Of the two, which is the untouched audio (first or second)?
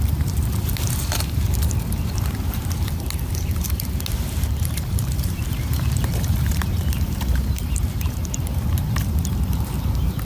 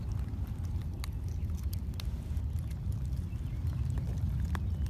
second